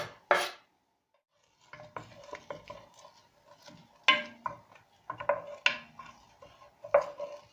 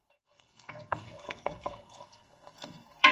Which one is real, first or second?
first